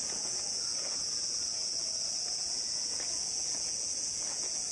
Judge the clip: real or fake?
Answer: fake